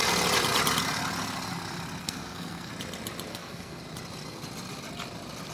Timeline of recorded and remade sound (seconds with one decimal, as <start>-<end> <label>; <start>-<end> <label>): 0.0-2.0 recorded; 2.0-2.7 remade; 2.7-3.3 recorded; 3.3-3.8 remade; 3.8-5.5 recorded